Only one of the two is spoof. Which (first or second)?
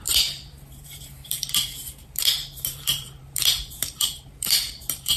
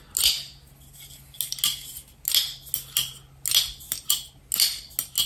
first